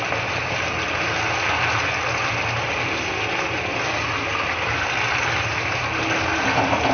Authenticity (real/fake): real